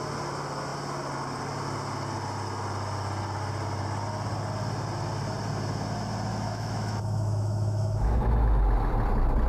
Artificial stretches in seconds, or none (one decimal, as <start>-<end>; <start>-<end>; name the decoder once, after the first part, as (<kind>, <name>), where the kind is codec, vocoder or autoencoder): 6.3-8.6 (autoencoder, DAC-VAE)